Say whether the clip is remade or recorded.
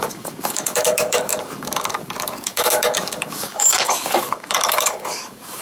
remade